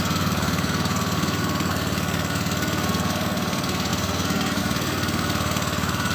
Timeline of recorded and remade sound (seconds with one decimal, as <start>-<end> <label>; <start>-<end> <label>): 0.0-6.1 remade